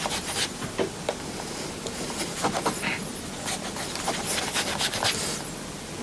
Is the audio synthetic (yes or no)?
no